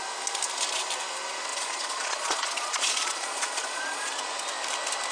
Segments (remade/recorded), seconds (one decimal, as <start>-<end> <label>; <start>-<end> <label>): 0.0-1.5 recorded; 1.5-4.1 remade; 4.1-5.1 recorded